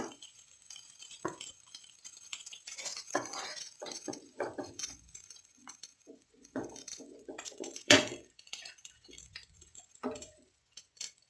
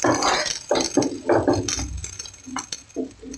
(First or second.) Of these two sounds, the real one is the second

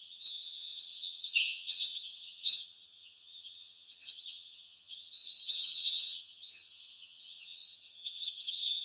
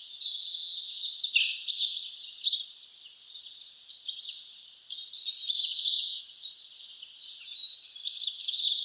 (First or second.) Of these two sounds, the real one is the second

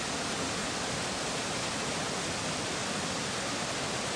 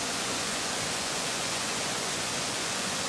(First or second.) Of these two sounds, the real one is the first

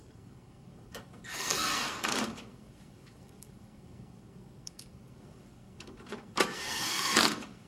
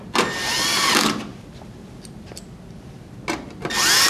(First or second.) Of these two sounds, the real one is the second